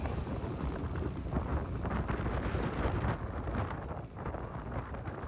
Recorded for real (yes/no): yes